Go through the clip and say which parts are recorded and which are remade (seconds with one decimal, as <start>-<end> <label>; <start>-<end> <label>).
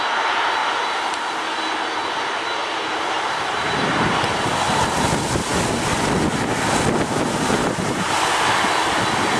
0.0-2.6 recorded; 2.6-4.4 remade; 4.4-7.6 recorded; 7.6-8.1 remade; 8.1-9.4 recorded